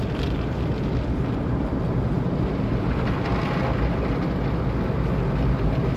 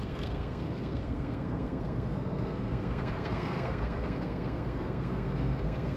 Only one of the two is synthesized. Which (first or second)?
second